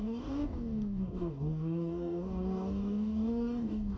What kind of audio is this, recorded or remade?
remade